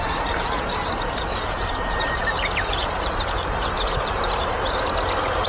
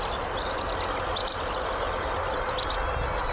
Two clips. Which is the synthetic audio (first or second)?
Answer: first